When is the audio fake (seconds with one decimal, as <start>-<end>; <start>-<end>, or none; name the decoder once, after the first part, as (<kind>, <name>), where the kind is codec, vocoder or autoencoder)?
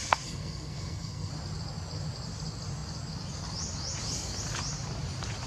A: 0.0-1.3 (codec, SNAC)